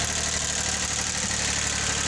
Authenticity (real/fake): real